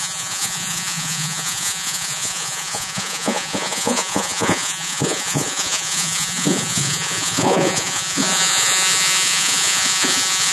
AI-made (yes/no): yes